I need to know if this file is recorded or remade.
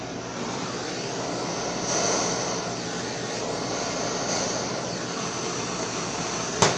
recorded